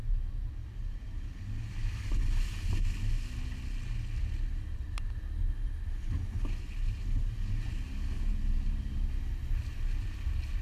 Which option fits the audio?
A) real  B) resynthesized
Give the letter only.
A